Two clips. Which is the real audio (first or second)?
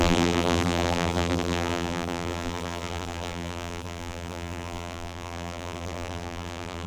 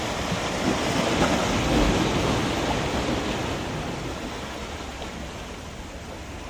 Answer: second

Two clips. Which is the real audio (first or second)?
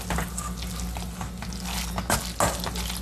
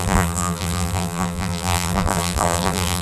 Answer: first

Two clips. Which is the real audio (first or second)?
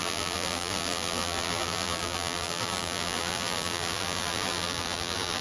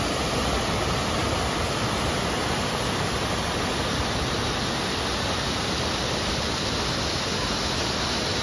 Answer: second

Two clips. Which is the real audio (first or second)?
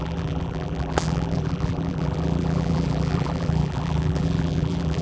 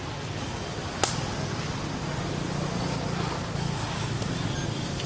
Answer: second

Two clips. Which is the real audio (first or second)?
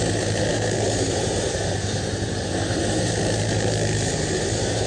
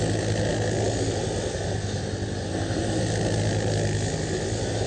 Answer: second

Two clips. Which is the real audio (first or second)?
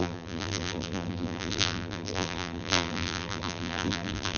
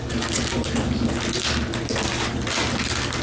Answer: second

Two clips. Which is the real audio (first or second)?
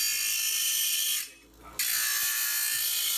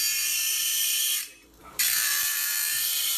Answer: first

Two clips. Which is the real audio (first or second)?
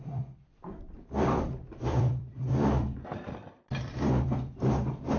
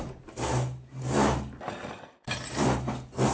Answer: second